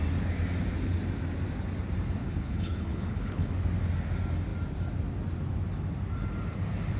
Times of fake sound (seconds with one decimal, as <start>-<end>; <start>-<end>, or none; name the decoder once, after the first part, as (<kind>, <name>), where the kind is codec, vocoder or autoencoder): 2.2-3.5 (codec, HILCodec)